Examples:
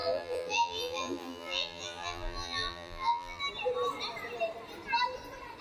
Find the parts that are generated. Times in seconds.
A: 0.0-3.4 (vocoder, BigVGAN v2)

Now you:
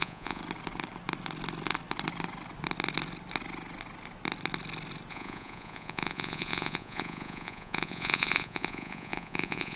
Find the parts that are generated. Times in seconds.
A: 0.0-0.4 (vocoder, Vocos); 5.1-9.8

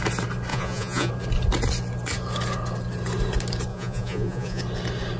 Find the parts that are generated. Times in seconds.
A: 0.5-1.1 (vocoder, Vocos); 3.7-4.6

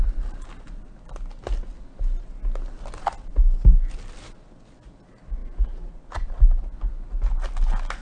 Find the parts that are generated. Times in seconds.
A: none

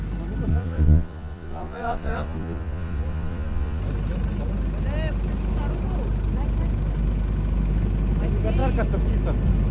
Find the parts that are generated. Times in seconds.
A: 0.5-3.8 (vocoder, Vocos)

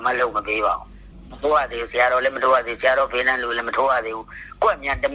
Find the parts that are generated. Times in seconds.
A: 0.5-1.4 (vocoder, BigVGAN v2); 1.8-3.6

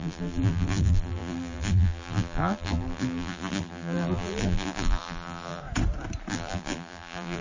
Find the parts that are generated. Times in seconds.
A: 0.0-5.6 (vocoder, BigVGAN v2); 6.3-7.4

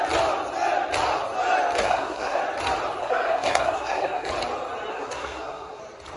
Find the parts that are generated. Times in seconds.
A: 1.8-2.4 (codec, SNAC); 3.0-4.3; 4.9-5.8